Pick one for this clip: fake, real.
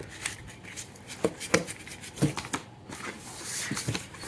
real